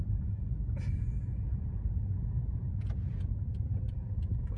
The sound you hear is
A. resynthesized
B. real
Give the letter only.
A